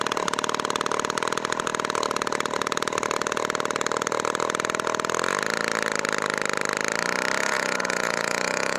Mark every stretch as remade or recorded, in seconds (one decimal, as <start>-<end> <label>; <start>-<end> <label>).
0.0-7.4 recorded; 7.4-8.8 remade